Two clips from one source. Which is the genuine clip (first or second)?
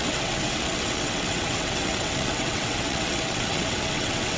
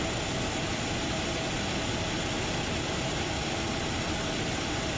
second